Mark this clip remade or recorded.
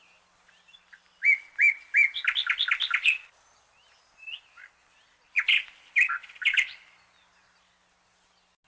recorded